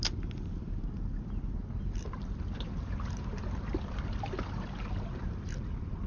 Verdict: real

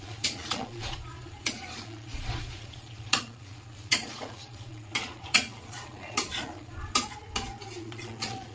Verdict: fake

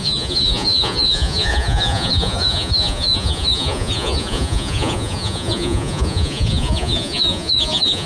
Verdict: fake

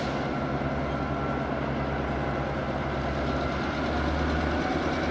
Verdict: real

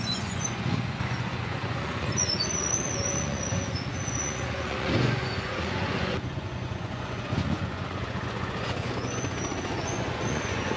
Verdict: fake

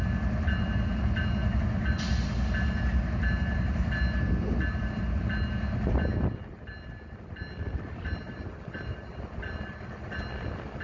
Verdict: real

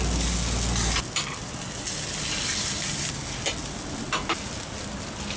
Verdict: real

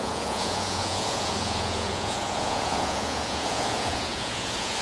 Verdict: fake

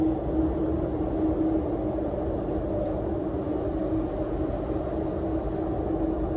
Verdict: real